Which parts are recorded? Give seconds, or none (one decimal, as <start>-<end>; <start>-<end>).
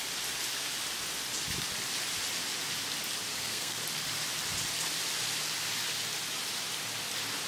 0.0-3.3; 3.8-7.5